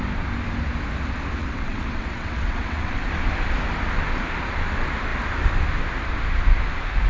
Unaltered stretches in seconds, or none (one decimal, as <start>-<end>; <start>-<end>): 0.0-1.4; 3.1-7.1